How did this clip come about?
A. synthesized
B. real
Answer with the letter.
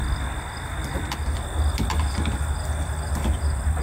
B